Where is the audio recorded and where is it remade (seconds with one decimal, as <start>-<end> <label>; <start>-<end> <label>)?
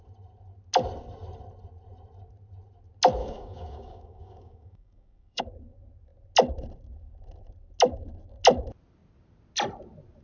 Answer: 0.0-3.2 recorded; 3.2-5.4 remade; 5.4-10.2 recorded